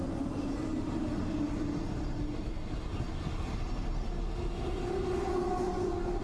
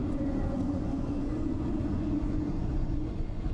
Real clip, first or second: first